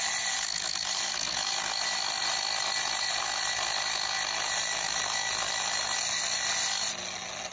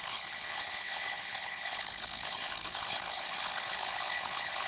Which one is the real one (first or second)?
first